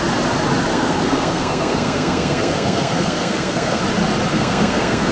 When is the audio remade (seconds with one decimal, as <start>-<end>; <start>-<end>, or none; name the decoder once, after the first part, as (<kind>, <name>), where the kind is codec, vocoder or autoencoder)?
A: 0.7-3.8 (codec, SNAC); 4.3-5.1